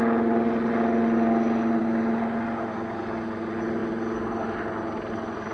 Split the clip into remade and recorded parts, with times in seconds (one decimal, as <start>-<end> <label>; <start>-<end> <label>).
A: 0.0-5.5 recorded